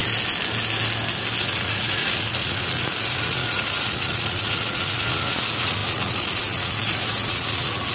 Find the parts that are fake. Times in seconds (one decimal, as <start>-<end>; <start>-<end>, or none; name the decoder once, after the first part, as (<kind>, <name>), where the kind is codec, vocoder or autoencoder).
1.4-7.9 (vocoder, Vocos)